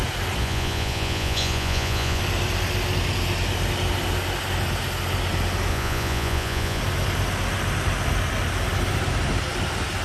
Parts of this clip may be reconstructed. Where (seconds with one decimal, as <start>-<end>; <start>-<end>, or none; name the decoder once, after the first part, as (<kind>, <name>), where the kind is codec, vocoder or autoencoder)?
0.4-2.2 (vocoder, Vocos); 5.7-6.8